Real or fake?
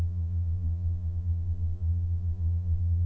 fake